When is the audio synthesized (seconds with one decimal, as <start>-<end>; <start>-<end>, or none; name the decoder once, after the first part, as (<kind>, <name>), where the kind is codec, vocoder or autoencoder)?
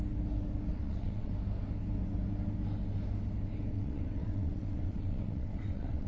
0.7-1.3 (vocoder, WaveNeXt); 3.7-6.1